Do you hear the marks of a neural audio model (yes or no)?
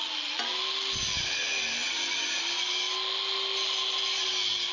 no